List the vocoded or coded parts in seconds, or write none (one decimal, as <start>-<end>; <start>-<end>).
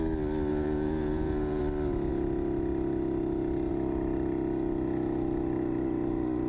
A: 0.5-1.6